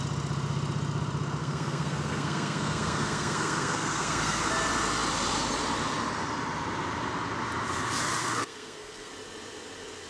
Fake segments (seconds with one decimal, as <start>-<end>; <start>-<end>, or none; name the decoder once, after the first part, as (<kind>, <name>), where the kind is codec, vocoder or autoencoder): 1.4-4.4 (codec, SNAC); 8.2-9.1